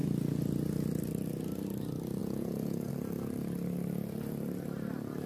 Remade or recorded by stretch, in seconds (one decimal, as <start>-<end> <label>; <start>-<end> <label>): 0.0-2.2 recorded; 2.2-2.9 remade; 2.9-5.3 recorded